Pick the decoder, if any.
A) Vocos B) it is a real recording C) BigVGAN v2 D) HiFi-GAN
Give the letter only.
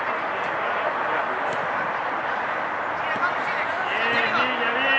B